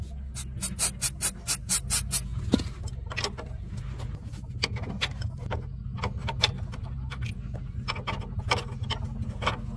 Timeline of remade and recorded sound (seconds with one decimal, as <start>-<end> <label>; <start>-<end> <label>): 0.0-2.3 recorded; 2.3-4.5 remade; 4.5-6.2 recorded; 6.2-7.3 remade; 7.3-9.8 recorded